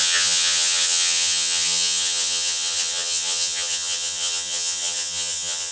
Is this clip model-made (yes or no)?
yes